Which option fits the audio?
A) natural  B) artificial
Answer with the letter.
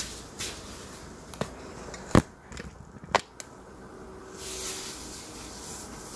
A